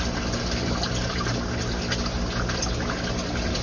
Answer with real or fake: real